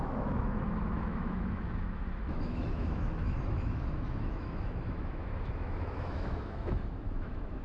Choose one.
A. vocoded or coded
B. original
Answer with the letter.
A